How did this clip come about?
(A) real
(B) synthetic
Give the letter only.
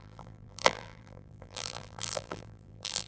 B